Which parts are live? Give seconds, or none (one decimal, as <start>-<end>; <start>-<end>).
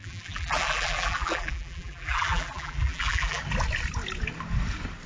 3.4-5.1